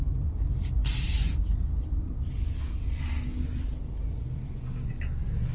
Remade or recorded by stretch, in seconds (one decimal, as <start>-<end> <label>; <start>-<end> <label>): 0.0-5.5 recorded